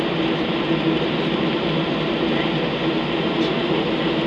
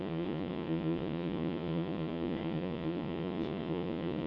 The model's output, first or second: second